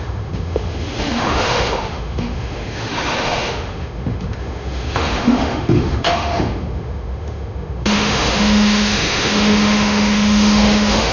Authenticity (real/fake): fake